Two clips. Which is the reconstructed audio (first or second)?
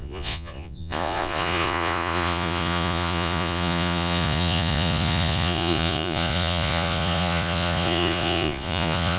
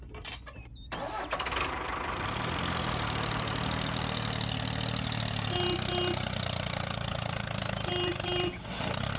first